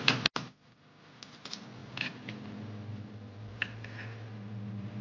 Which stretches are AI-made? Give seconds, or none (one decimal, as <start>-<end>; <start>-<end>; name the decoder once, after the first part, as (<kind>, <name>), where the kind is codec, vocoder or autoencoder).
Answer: none